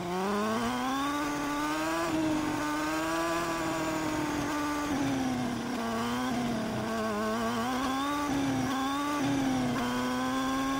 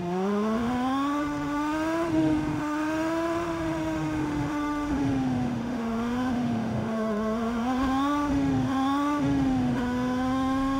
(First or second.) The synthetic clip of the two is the second